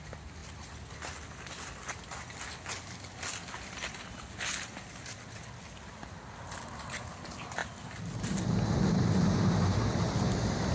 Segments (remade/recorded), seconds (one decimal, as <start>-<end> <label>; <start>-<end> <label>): 0.0-10.7 recorded